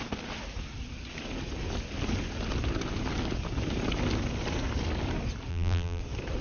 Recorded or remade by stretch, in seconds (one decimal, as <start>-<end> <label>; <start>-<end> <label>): 0.0-5.5 recorded; 5.5-6.0 remade; 6.0-6.4 recorded